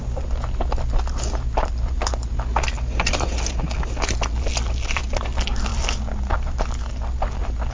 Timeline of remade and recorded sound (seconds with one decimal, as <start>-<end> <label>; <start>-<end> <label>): 0.0-7.7 recorded